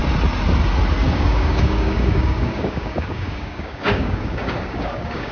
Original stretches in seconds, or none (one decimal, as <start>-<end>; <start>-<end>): 0.0-1.1